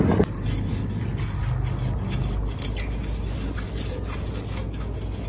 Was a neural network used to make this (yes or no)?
no